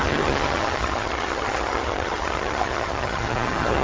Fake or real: fake